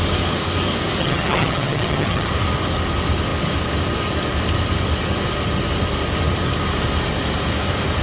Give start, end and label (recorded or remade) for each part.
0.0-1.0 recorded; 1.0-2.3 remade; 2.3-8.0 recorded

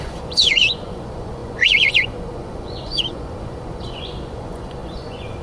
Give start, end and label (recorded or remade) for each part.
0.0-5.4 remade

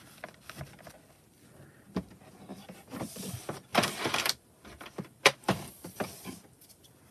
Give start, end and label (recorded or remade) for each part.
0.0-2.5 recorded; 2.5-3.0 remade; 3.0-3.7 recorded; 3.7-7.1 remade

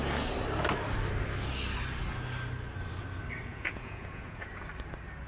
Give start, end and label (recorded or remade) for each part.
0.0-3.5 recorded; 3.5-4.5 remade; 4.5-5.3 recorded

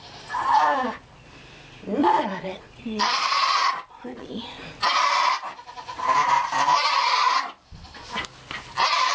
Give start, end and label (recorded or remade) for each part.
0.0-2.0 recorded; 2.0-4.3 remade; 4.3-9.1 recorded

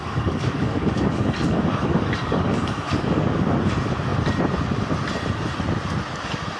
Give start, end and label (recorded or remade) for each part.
0.0-3.3 remade; 3.3-6.6 recorded

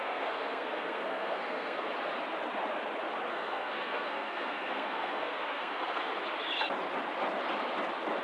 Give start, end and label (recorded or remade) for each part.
0.0-1.9 remade; 1.9-3.3 recorded; 3.3-6.1 remade; 6.1-8.2 recorded